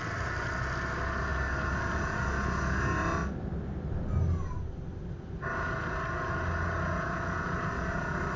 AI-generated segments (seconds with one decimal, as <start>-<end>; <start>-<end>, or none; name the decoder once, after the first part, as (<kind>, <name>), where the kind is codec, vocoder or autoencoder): none